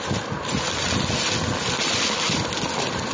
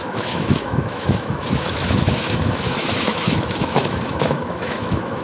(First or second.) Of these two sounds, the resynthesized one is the second